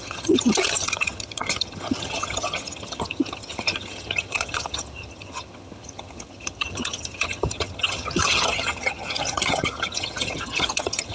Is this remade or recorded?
remade